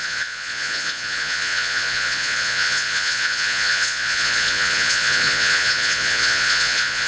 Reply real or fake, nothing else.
fake